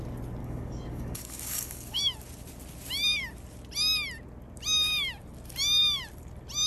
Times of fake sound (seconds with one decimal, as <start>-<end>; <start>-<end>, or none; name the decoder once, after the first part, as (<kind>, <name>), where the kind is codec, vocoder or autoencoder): 0.4-2.0 (codec, DAC)